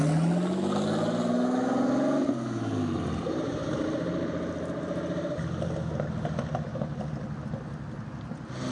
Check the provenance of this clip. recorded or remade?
recorded